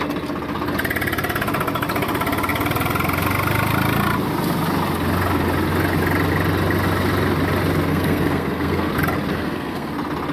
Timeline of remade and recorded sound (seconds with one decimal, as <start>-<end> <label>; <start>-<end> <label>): 0.0-7.9 recorded; 7.9-8.9 remade; 8.9-9.3 recorded; 9.3-9.9 remade; 9.9-10.3 recorded